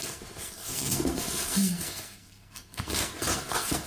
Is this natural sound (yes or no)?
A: no